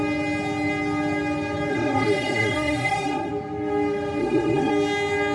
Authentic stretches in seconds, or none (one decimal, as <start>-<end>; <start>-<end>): 0.0-1.7; 3.3-4.2; 4.7-5.3